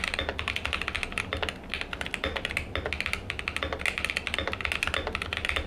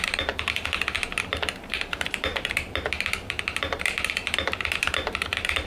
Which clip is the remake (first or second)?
second